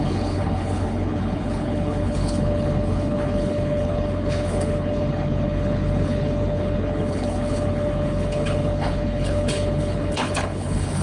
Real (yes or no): no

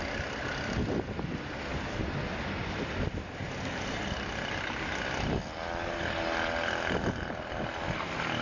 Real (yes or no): yes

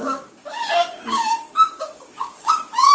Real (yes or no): no